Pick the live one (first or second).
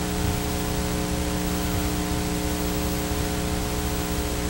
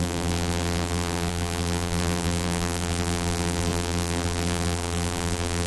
first